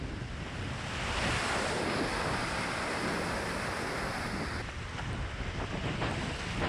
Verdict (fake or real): real